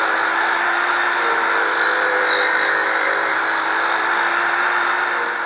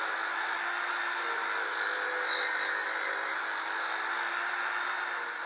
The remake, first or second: first